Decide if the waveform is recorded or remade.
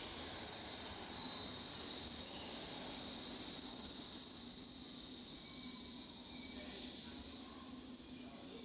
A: recorded